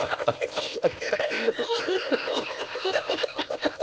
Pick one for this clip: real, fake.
fake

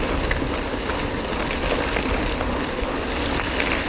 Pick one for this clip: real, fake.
real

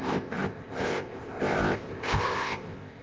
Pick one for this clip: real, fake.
fake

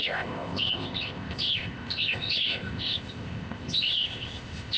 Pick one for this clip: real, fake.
fake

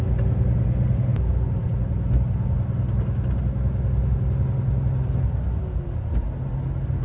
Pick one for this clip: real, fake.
real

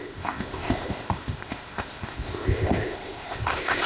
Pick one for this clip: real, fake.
fake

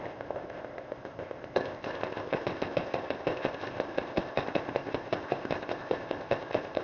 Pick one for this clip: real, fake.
fake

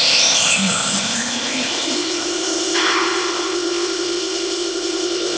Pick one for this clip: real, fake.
fake